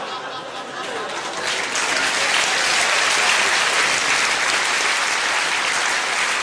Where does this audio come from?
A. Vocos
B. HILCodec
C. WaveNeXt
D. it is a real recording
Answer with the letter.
D